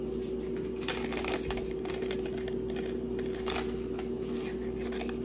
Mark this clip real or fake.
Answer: real